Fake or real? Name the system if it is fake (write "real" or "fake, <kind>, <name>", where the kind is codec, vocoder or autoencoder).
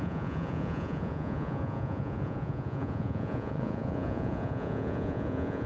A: fake, vocoder, Vocos